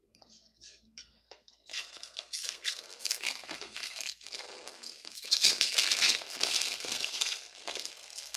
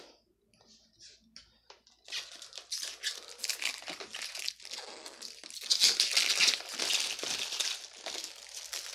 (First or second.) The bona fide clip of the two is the second